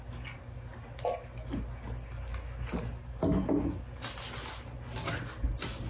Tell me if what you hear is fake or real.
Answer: real